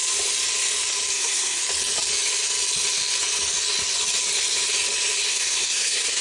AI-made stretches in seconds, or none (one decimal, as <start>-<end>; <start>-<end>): 1.1-1.6; 5.3-6.2